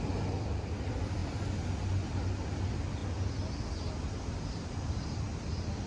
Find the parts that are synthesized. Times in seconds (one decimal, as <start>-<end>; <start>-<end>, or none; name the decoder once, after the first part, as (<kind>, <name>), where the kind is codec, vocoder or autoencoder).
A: 0.0-1.2 (vocoder, BigVGAN v2); 2.6-3.0; 4.5-5.9